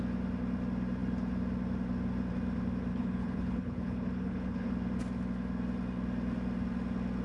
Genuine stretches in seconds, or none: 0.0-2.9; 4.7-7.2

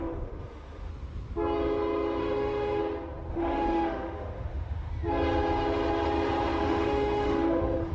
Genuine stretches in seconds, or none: 0.9-2.2; 2.8-3.3; 4.9-6.6

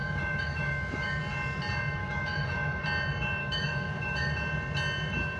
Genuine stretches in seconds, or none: 1.2-2.0; 2.8-3.4; 4.3-5.4

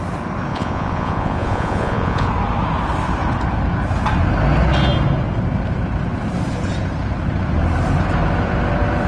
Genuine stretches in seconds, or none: 0.0-0.5; 2.3-9.1

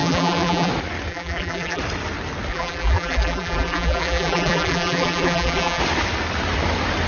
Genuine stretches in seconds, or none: 0.7-1.1; 1.8-2.5; 5.8-7.1

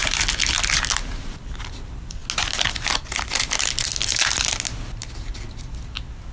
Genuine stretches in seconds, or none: 0.0-6.3

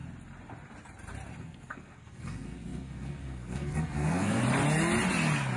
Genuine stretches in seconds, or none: 0.0-1.4; 4.4-5.6

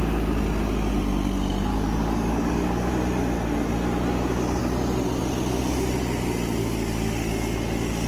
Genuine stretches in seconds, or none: 0.0-1.7; 2.9-6.6; 7.3-8.1